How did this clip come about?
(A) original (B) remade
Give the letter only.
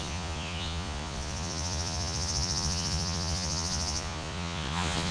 B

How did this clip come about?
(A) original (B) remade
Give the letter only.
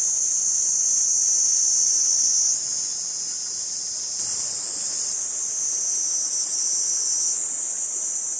A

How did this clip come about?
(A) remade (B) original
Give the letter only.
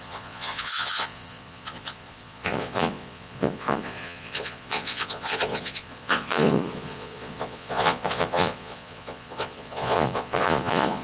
A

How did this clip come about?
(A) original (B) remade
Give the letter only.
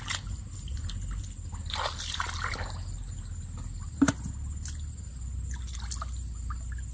A